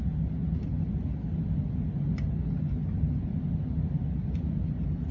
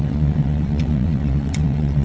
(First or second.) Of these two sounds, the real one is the first